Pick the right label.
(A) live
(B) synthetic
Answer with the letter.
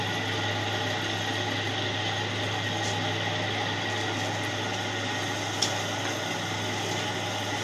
A